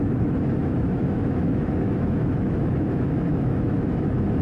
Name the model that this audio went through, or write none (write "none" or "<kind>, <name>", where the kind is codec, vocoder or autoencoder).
autoencoder, DAC-VAE